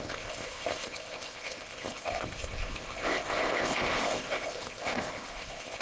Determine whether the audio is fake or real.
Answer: fake